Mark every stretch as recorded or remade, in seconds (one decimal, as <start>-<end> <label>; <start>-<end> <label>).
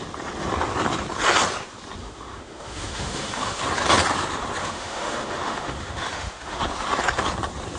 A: 0.0-2.0 recorded; 2.0-3.6 remade; 3.6-4.6 recorded; 4.6-6.6 remade; 6.6-7.8 recorded